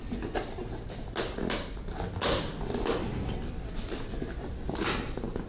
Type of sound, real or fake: real